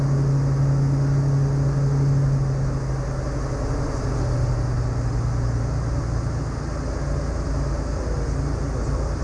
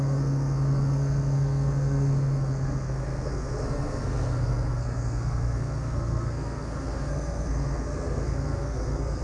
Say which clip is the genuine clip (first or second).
first